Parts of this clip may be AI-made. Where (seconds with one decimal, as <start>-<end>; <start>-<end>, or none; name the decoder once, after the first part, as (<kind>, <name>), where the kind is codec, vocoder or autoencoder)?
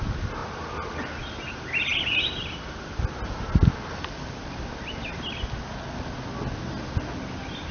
none